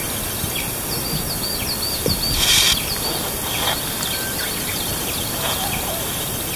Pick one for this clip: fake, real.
real